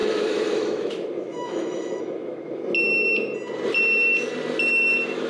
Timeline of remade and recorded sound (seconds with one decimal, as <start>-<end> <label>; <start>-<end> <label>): 0.0-2.6 remade; 2.6-4.7 recorded; 4.7-5.3 remade